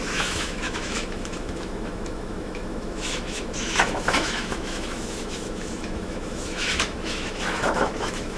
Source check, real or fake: fake